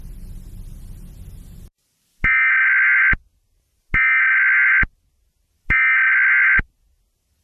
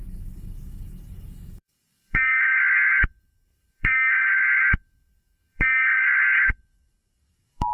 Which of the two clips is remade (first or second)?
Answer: second